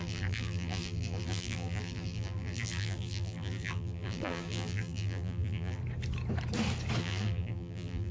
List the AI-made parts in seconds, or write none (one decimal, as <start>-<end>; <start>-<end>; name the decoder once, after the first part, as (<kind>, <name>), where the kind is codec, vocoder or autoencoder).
0.0-5.8 (vocoder, BigVGAN v2); 7.0-8.1